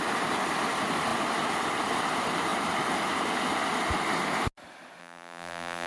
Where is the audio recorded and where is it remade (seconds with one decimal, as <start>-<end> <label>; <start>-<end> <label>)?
0.0-5.0 recorded; 5.0-5.9 remade